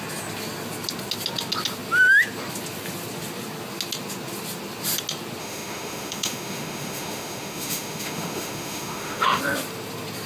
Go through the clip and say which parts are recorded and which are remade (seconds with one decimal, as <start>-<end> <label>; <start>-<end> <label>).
0.0-5.4 recorded; 5.4-9.4 remade; 9.4-10.3 recorded